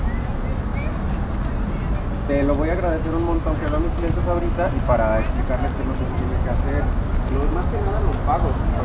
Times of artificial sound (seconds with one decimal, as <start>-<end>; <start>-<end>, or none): none